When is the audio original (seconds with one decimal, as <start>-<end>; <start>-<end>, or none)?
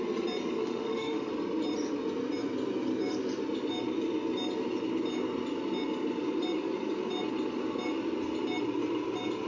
0.0-0.6; 1.3-9.5